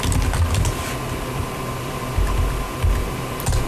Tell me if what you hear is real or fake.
real